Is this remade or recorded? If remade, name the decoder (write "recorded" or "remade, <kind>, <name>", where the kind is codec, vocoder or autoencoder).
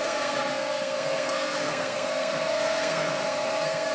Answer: remade, codec, SNAC